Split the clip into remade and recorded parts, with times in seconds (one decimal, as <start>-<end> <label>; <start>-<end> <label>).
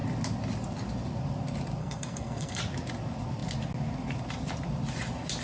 0.0-1.8 recorded; 1.8-2.6 remade; 2.6-5.4 recorded